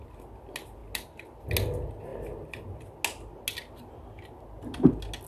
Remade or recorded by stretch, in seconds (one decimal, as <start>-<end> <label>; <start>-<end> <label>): 0.0-5.3 recorded